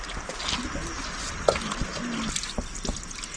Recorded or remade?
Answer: recorded